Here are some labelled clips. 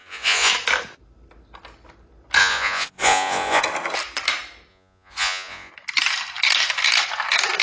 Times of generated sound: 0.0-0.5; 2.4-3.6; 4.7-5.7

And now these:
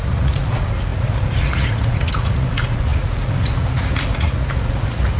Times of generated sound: 0.0-5.2

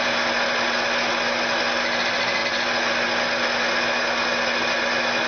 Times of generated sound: none

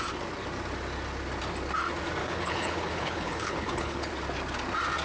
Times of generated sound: 2.2-4.1

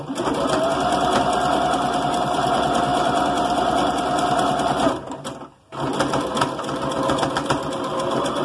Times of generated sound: none

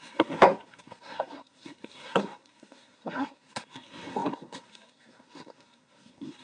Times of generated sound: 0.0-6.4